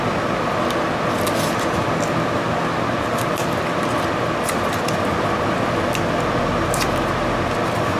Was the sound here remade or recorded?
recorded